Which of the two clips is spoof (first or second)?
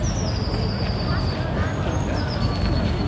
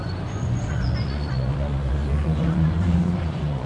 second